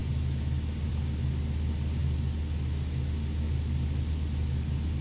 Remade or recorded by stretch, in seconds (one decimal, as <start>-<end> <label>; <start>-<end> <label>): 0.0-5.0 recorded